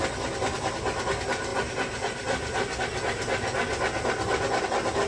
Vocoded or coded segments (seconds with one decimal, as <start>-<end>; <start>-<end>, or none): none